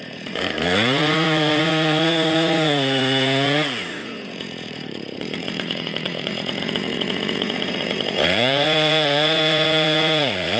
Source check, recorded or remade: remade